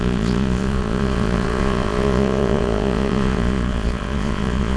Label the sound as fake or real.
fake